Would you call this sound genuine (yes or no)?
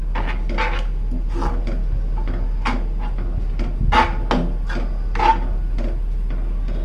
yes